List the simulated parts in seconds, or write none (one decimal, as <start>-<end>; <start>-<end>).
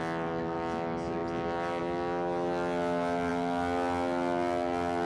none